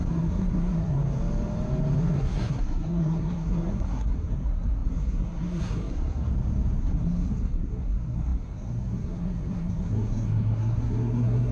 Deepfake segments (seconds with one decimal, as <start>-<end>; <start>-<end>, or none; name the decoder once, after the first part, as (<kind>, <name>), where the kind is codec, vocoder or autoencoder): 0.0-1.0 (codec, SNAC); 2.0-6.3; 6.8-11.5